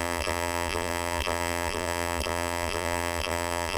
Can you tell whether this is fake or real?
fake